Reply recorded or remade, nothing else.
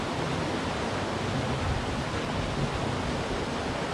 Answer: recorded